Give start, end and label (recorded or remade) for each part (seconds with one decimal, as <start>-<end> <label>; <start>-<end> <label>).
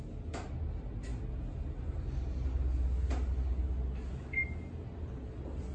0.0-5.7 recorded